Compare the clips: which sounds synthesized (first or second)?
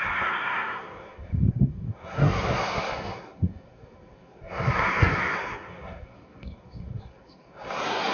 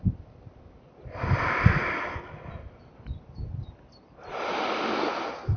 first